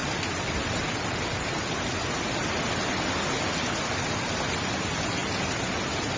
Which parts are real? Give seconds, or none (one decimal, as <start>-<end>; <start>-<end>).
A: 0.0-6.2